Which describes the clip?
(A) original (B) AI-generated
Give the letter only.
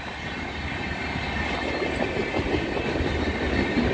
A